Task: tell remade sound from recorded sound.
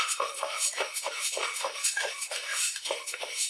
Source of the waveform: remade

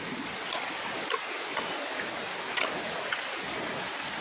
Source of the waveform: recorded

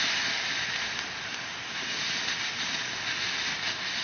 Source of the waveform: recorded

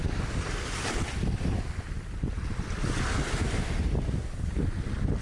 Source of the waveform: recorded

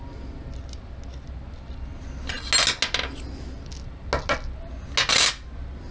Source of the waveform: recorded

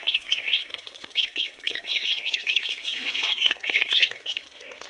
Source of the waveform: remade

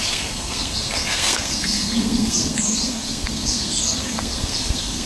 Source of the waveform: remade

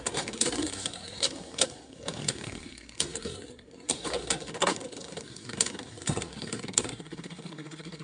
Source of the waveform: remade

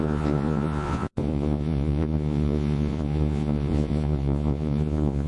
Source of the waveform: remade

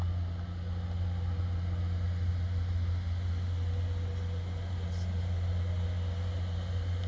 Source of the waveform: recorded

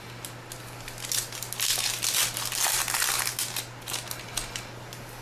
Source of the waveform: recorded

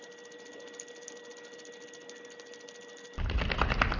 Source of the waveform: recorded